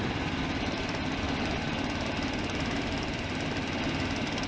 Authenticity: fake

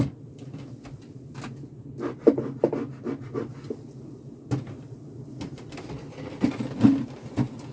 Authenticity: real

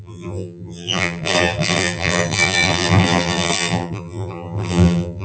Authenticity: fake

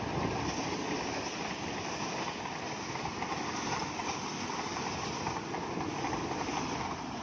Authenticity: real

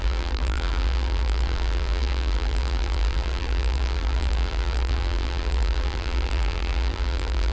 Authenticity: fake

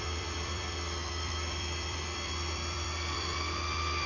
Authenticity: fake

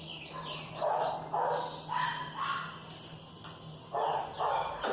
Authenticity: real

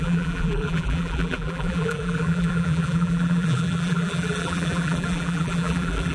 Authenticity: fake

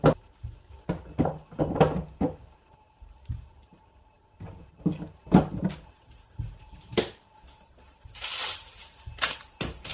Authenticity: real